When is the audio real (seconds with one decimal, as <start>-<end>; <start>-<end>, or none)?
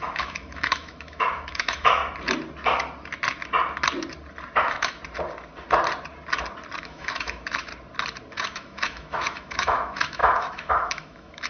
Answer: 2.0-4.6; 5.0-6.8; 7.7-8.3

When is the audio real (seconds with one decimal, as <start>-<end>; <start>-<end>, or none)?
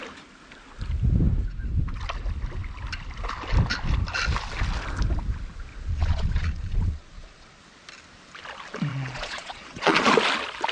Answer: 0.0-5.7; 7.6-8.9; 10.1-10.7